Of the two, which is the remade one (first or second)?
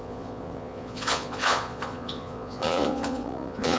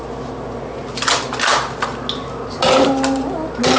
first